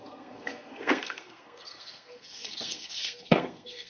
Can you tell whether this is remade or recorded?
remade